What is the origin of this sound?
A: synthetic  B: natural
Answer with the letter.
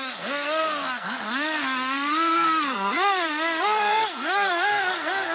A